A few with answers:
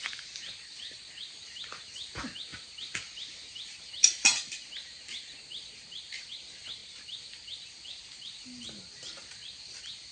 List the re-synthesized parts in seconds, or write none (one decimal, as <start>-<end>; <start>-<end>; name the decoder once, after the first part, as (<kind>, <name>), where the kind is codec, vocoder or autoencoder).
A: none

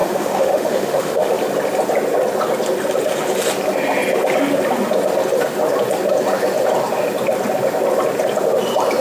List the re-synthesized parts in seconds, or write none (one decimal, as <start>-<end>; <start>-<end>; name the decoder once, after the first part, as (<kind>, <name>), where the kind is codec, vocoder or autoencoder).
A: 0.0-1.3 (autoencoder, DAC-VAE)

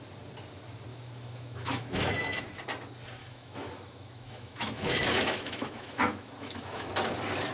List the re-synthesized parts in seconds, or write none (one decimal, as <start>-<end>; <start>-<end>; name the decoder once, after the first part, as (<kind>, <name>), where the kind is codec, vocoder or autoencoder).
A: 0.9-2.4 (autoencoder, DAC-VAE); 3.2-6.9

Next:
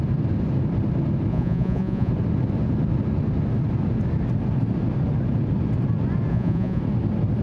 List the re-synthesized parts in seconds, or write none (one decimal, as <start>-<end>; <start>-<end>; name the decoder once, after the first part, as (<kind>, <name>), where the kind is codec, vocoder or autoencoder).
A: 1.3-2.1 (vocoder, Vocos); 6.3-6.8

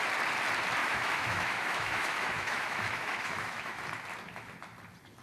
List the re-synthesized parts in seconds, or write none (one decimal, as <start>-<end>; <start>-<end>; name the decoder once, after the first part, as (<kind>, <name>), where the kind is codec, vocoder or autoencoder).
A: 0.8-3.9 (autoencoder, DAC-VAE)

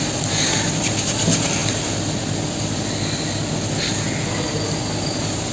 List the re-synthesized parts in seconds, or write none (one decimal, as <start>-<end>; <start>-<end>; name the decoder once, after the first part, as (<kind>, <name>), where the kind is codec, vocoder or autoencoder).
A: none